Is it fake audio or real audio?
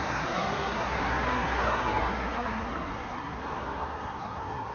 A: fake